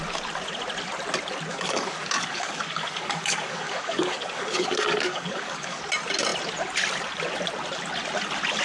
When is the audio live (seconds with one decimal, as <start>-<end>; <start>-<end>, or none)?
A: 0.0-1.5; 5.8-8.6